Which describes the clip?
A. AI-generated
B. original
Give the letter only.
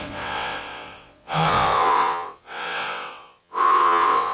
A